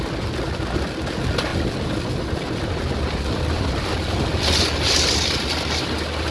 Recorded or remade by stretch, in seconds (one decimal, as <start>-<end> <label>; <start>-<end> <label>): 0.0-6.3 recorded